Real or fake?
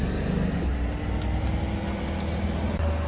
real